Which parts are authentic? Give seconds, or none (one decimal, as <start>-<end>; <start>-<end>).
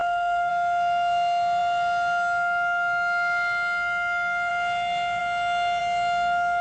0.5-6.6